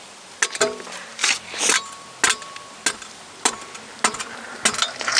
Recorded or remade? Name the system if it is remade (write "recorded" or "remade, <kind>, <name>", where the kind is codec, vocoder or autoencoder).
recorded